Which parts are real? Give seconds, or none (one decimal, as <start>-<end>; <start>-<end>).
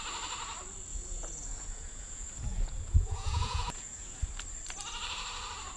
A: 0.0-0.9; 4.4-5.8